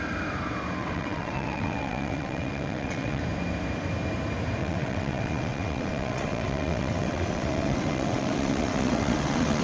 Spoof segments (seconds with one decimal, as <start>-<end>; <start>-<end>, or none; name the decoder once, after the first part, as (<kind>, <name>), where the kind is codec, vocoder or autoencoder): 0.8-3.2 (vocoder, WaveNeXt); 4.6-9.6